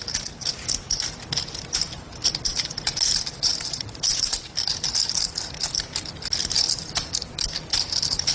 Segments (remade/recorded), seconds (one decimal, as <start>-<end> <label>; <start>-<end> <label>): 0.0-8.3 recorded